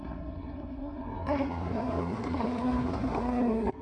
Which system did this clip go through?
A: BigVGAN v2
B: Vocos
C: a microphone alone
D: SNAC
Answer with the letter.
D